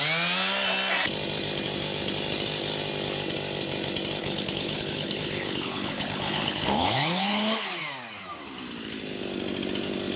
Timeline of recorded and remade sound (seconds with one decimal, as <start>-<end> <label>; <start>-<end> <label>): 0.0-4.2 recorded; 4.2-7.8 remade; 7.8-10.2 recorded